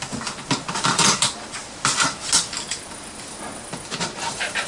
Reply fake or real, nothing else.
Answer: real